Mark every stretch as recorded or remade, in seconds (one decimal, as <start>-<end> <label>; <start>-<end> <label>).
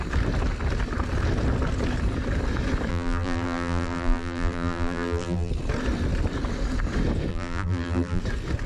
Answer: 0.0-2.9 recorded; 2.9-5.5 remade; 5.5-7.3 recorded; 7.3-8.2 remade; 8.2-8.7 recorded